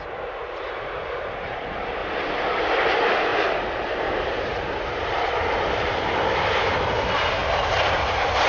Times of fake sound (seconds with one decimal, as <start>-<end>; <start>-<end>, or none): 2.0-2.6; 3.3-6.7; 7.4-8.1